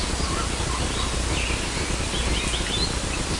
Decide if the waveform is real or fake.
real